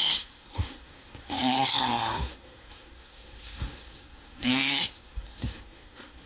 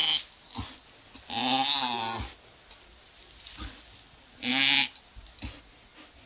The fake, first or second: first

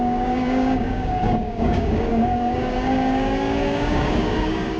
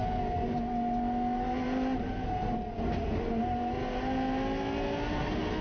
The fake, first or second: first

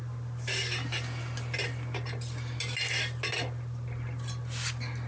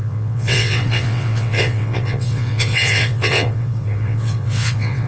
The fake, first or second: second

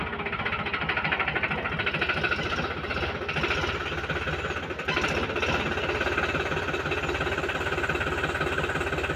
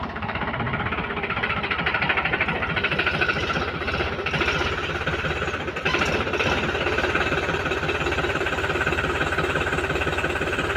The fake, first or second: second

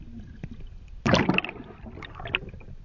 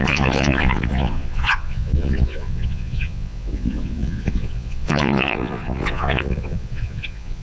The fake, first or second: second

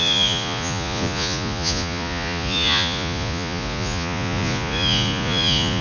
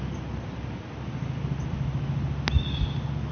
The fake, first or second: first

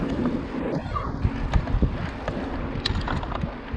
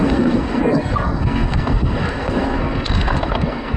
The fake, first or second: second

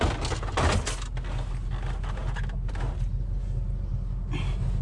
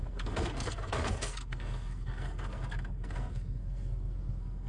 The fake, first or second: second